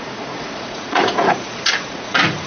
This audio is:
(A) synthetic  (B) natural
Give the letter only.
A